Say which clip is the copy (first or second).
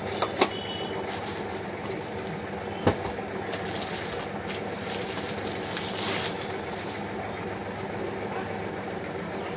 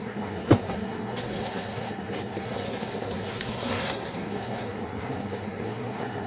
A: second